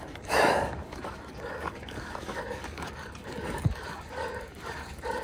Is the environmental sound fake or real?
fake